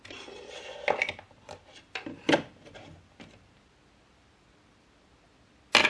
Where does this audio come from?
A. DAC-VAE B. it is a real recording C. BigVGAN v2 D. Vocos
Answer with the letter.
B